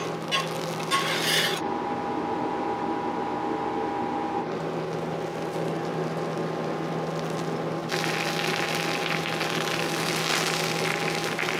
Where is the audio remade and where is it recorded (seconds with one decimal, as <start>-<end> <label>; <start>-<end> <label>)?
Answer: 0.0-1.5 recorded; 1.5-2.1 remade; 2.1-11.6 recorded